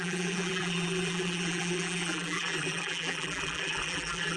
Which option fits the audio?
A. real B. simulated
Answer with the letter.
B